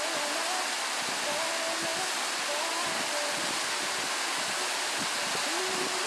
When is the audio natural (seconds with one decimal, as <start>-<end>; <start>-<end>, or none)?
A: 0.0-6.1